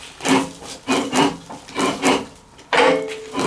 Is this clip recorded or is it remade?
recorded